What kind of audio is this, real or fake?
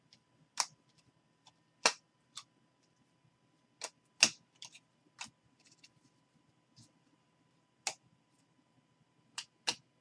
real